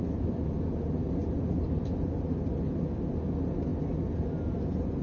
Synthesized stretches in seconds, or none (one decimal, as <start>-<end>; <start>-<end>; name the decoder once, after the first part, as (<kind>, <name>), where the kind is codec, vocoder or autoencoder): 1.2-2.8 (vocoder, BigVGAN v2)